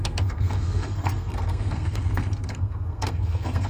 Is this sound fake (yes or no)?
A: yes